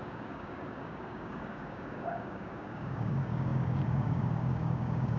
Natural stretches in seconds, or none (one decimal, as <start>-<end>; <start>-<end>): none